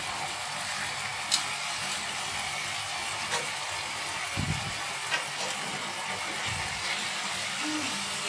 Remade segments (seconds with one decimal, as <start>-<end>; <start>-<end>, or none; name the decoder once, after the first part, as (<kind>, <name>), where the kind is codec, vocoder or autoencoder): none